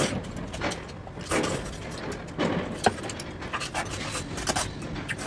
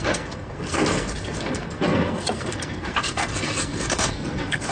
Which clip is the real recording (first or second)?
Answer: first